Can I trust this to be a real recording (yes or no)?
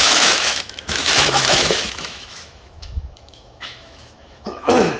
no